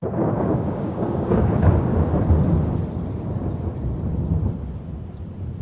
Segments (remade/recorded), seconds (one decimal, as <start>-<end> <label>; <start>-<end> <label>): 0.0-1.9 remade; 1.9-5.6 recorded